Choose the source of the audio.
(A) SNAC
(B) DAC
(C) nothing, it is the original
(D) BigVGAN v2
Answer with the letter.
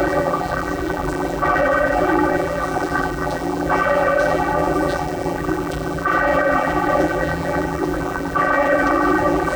D